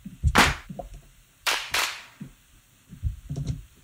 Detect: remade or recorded remade